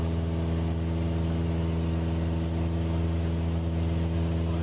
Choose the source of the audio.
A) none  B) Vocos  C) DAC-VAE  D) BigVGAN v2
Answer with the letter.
A